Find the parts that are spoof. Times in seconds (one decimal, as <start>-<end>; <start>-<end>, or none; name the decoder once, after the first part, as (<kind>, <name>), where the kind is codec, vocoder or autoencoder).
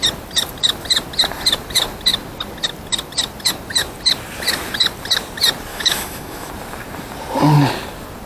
5.7-6.5 (autoencoder, DAC-VAE)